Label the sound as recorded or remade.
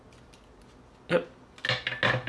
recorded